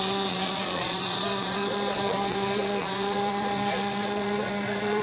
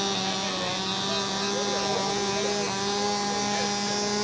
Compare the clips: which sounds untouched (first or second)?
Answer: second